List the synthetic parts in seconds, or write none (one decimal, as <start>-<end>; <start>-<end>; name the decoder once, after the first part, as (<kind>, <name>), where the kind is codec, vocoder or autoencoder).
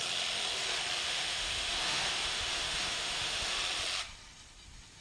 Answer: 1.0-3.6 (autoencoder, DAC-VAE)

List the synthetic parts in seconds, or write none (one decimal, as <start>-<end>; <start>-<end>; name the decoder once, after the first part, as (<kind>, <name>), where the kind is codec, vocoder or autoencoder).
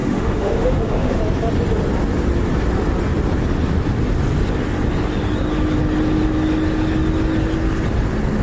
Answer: 0.0-1.2 (autoencoder, DAC-VAE)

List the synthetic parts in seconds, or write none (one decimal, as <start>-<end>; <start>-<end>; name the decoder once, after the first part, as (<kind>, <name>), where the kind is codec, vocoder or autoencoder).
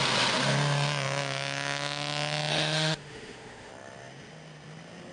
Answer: 2.5-3.7 (autoencoder, DAC-VAE)